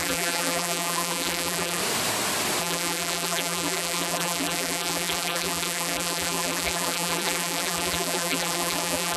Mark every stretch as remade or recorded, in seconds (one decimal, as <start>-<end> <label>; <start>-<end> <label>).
0.0-1.8 remade; 1.8-2.6 recorded; 2.6-9.2 remade